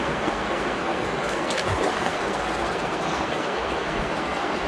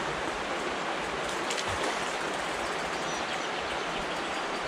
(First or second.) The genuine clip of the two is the second